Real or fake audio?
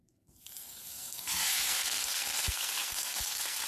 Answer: fake